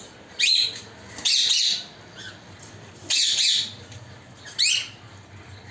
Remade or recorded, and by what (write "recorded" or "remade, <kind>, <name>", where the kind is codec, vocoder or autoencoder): recorded